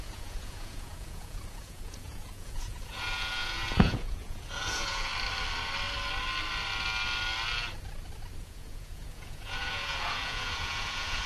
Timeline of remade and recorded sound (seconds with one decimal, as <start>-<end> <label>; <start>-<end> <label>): 0.0-5.1 remade; 5.1-8.4 recorded; 8.4-11.3 remade

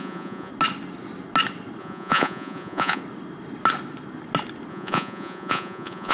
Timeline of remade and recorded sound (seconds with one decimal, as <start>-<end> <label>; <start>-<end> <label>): 0.0-0.5 remade; 0.5-1.8 recorded; 1.8-3.0 remade; 3.0-4.7 recorded; 4.7-6.1 remade

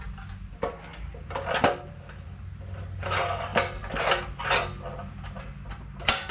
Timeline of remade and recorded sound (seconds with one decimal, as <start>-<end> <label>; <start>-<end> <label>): 0.0-6.3 recorded

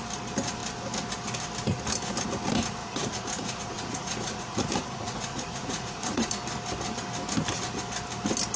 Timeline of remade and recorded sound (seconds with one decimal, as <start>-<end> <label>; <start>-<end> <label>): 0.0-2.8 recorded; 2.8-6.3 remade; 6.3-8.6 recorded

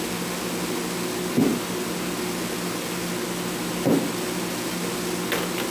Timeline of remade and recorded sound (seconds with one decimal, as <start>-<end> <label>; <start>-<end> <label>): 0.0-5.7 recorded